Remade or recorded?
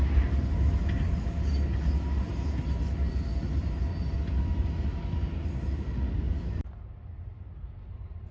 recorded